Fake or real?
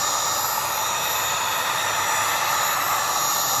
real